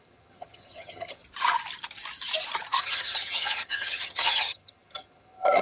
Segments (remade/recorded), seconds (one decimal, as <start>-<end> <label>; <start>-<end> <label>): 0.0-1.2 remade; 1.2-2.8 recorded; 2.8-5.6 remade